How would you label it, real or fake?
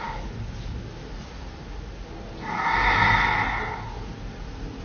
real